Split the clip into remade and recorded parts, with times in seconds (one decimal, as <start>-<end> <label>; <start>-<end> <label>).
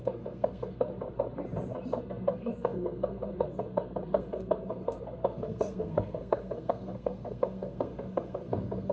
0.0-0.9 remade; 0.9-2.0 recorded; 2.0-8.9 remade